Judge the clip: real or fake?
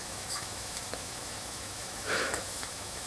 fake